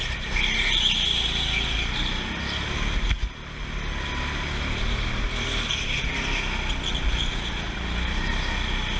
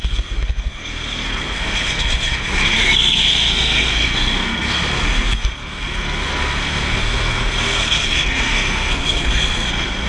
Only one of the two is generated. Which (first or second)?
second